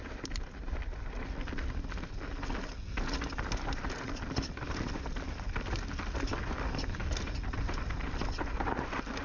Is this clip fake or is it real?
real